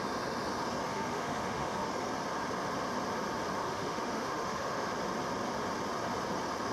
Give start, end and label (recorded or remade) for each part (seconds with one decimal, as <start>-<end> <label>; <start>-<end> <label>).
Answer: 0.0-0.9 recorded; 0.9-1.9 remade; 1.9-3.6 recorded; 3.6-4.9 remade; 4.9-6.7 recorded